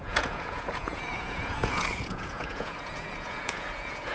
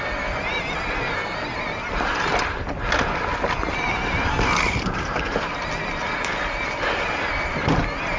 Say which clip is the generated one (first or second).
first